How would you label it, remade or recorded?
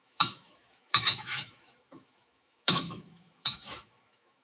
remade